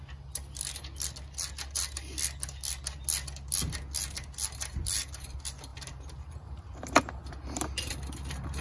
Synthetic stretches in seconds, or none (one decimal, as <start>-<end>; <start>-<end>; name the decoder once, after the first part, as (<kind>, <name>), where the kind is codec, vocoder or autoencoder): 5.7-7.9 (vocoder, BigVGAN v2)